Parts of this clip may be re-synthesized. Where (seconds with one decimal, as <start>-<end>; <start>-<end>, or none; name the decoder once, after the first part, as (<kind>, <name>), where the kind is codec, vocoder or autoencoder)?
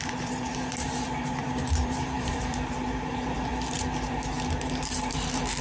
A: 0.0-3.5 (vocoder, BigVGAN v2); 4.1-5.6